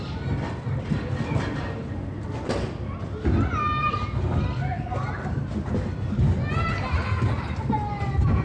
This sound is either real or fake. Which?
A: real